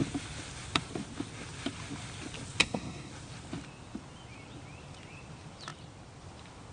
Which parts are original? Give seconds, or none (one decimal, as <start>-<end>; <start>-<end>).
0.0-2.6; 3.1-6.7